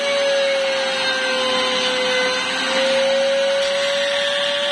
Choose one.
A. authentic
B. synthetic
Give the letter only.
A